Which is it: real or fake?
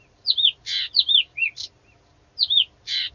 real